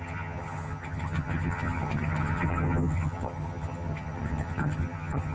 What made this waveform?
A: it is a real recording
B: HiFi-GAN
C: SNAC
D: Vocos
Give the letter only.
B